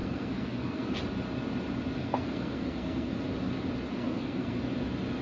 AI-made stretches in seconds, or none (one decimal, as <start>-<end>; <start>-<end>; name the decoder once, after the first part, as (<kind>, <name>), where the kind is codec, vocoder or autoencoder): 0.0-1.0 (codec, SNAC); 2.0-3.2; 3.9-4.6